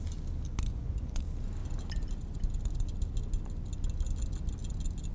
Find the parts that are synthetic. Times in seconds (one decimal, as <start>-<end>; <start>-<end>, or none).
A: 0.7-1.2